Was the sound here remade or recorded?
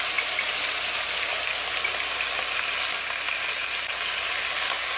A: recorded